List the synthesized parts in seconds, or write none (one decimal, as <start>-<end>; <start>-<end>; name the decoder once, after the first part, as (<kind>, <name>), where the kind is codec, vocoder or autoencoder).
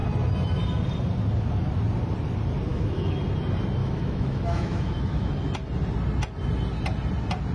2.7-3.2 (autoencoder, DAC-VAE); 3.8-5.3